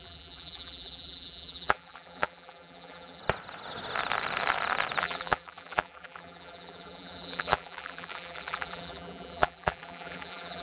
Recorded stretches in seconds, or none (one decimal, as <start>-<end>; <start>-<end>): 3.2-5.0